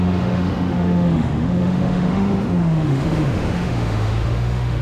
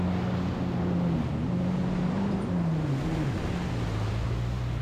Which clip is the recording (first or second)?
second